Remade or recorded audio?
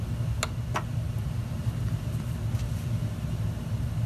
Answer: recorded